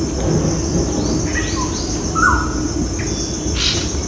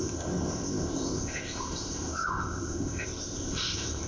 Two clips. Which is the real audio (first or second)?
first